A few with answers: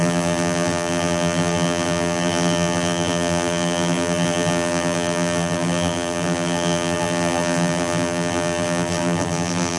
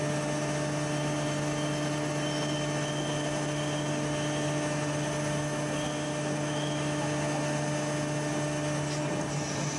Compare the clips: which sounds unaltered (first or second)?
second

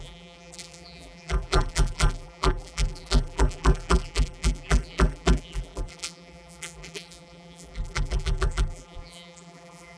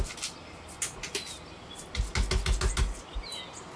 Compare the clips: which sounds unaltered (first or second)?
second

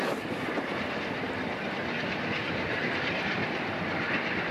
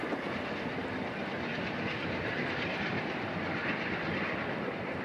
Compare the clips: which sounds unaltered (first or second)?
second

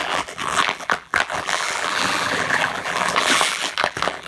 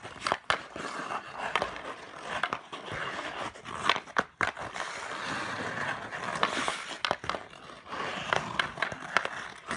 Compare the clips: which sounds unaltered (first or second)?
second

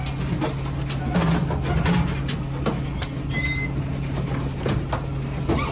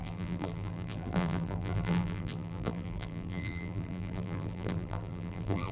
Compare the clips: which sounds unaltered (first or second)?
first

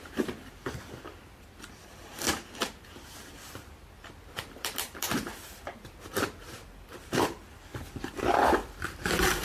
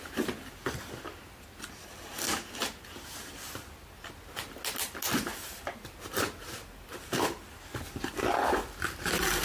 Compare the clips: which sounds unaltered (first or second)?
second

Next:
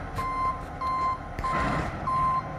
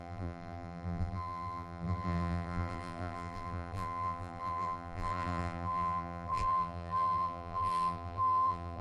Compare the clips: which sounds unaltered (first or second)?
first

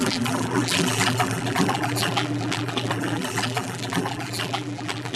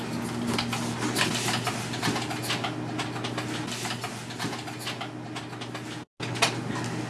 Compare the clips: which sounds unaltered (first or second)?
second